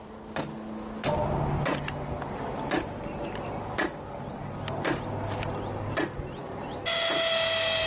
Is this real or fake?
real